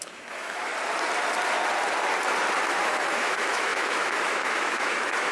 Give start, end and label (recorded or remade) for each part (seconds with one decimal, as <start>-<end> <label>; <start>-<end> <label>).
0.0-0.7 remade; 0.7-2.7 recorded; 2.7-5.3 remade